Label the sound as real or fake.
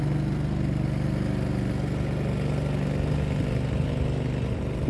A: real